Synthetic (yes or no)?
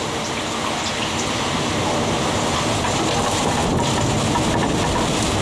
no